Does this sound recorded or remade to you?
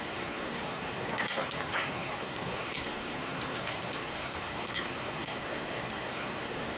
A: remade